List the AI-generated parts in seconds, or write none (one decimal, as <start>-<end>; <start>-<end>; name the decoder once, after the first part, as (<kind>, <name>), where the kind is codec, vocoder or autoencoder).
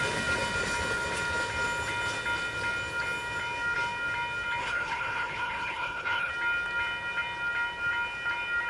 4.6-6.3 (codec, HILCodec)